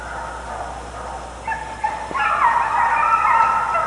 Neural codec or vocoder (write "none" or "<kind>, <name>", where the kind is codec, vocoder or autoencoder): none